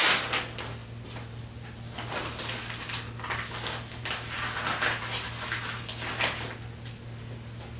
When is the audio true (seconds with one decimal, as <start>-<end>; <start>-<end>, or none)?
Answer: 0.0-7.8